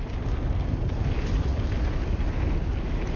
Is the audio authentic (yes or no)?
yes